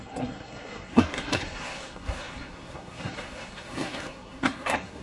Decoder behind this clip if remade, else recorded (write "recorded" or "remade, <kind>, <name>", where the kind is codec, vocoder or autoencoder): remade, codec, SNAC